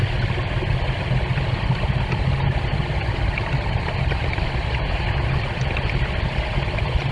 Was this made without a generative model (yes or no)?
yes